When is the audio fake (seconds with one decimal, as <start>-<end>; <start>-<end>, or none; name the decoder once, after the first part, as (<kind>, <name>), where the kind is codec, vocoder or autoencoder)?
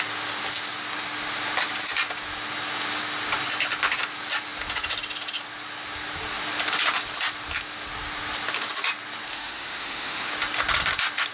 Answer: 9.3-10.3 (autoencoder, DAC-VAE)